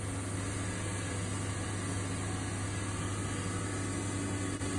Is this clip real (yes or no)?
yes